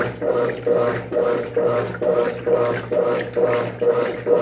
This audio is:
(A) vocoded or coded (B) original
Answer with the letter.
B